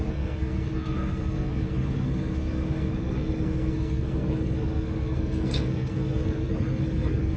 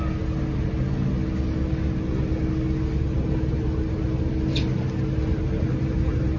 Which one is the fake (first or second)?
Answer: first